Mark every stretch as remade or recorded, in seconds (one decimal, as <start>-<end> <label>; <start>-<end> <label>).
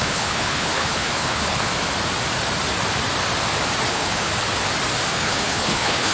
0.0-1.7 remade; 1.7-3.9 recorded; 3.9-4.3 remade; 4.3-5.1 recorded; 5.1-6.1 remade